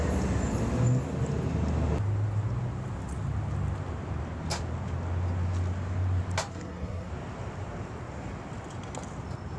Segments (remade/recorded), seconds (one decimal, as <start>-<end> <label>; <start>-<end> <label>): 0.0-6.5 recorded; 6.5-7.1 remade; 7.1-9.6 recorded